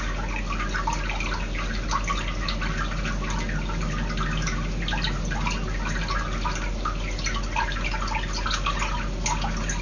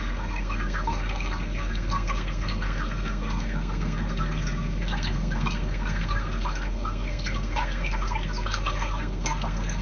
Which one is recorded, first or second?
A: first